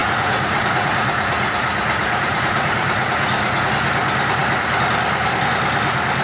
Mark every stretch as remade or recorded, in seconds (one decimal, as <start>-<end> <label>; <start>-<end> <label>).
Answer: 0.0-3.7 remade; 3.7-6.2 recorded